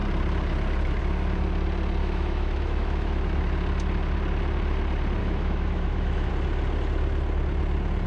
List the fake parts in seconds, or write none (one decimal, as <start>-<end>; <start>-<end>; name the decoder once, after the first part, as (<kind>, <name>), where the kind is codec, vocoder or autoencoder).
2.0-3.4 (autoencoder, DAC-VAE); 5.2-6.3

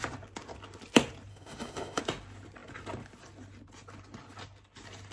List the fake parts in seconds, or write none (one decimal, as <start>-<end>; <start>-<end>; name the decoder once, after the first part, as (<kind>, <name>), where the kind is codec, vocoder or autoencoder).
1.3-2.0 (autoencoder, DAC-VAE)